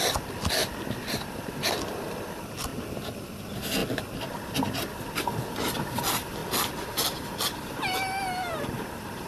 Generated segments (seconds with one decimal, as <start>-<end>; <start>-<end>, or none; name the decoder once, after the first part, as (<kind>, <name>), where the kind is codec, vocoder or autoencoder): none